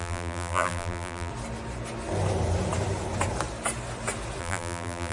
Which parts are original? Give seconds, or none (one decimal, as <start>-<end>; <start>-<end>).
1.3-4.4